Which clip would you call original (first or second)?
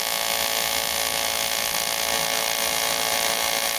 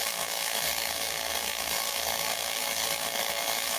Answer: first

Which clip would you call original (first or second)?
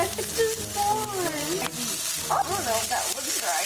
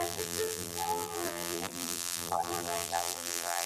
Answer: first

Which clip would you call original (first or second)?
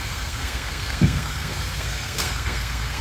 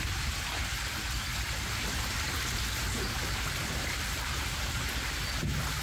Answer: second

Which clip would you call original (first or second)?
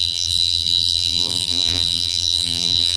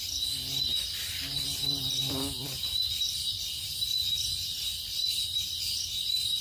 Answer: second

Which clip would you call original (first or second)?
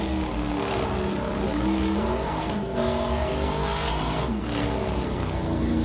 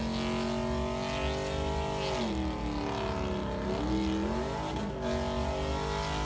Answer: second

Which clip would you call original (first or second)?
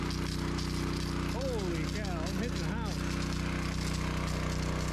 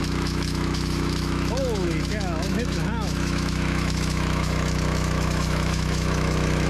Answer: first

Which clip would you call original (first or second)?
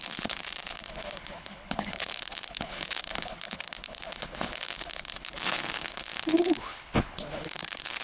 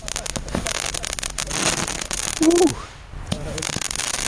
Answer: second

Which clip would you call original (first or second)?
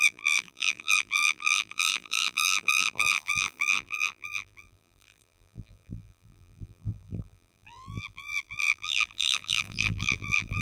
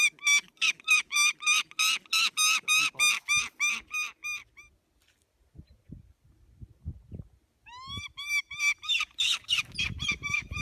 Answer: second